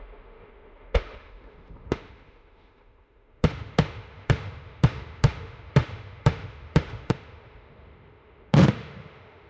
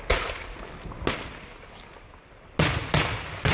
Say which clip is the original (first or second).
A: second